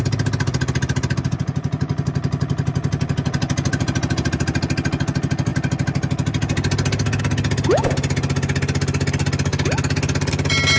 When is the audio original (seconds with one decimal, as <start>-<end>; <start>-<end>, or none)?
0.0-10.8